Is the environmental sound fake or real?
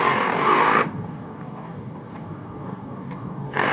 fake